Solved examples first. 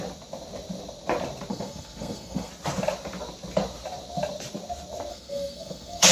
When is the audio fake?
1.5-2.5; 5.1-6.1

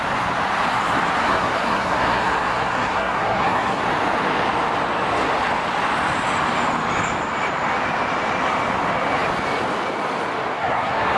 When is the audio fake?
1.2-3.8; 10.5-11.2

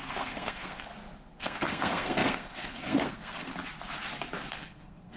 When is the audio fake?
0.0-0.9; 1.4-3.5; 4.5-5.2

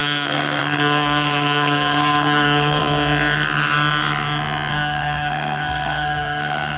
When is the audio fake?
0.0-2.8; 4.7-6.8

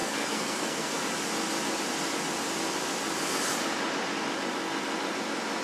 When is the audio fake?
0.0-1.0

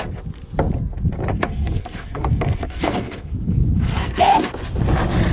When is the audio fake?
1.3-4.5